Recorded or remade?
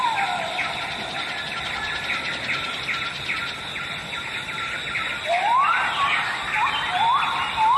recorded